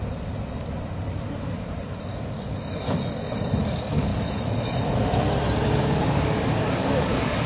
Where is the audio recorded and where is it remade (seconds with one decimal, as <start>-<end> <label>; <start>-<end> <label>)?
0.0-3.6 recorded; 3.6-4.1 remade; 4.1-5.8 recorded; 5.8-7.5 remade